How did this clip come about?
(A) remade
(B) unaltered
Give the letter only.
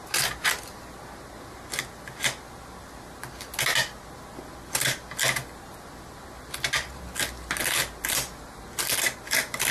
B